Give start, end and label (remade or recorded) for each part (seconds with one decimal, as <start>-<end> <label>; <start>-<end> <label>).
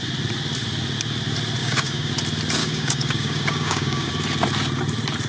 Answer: 0.0-1.6 recorded; 1.6-2.1 remade; 2.1-2.6 recorded; 2.6-4.1 remade; 4.1-5.3 recorded